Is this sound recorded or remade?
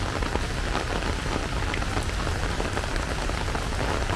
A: recorded